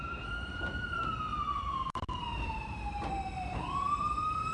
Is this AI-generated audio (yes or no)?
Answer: yes